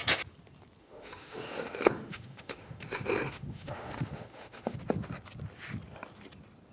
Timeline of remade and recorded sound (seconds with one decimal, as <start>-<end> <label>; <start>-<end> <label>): 0.0-0.8 recorded; 0.8-4.8 remade; 4.8-6.7 recorded